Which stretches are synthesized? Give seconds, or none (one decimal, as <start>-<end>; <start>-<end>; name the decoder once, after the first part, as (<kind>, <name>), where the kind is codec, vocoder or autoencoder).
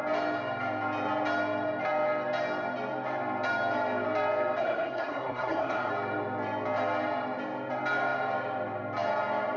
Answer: 4.6-5.9 (codec, SNAC)